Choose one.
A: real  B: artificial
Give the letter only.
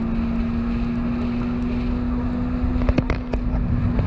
A